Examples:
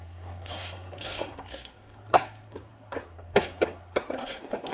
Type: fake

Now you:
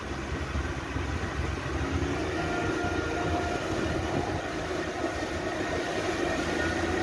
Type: real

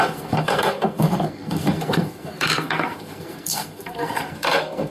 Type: fake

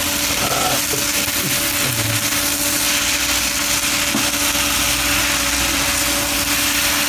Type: real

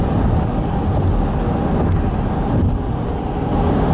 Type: real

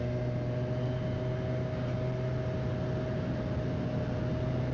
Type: real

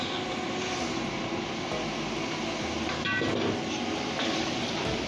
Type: real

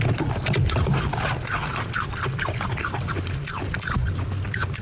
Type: real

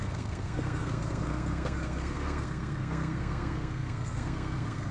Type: fake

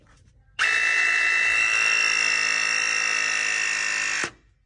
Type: real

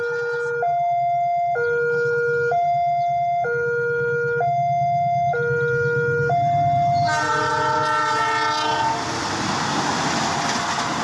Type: real